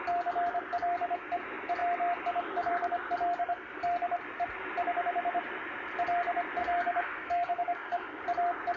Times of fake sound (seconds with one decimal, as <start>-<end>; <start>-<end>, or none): 6.6-8.2